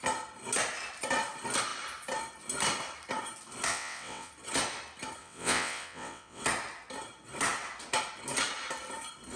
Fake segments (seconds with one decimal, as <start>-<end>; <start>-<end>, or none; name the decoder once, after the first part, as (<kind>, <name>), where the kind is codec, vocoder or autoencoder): 3.7-4.3 (vocoder, WaveNeXt); 5.2-6.4